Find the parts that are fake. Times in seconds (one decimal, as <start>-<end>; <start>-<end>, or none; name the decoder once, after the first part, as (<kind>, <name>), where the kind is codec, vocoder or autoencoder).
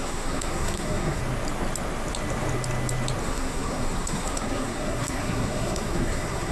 0.0-1.2 (codec, SNAC); 3.2-6.5